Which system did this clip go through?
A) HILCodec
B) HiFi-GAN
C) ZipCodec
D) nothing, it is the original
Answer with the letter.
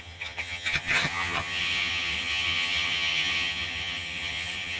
B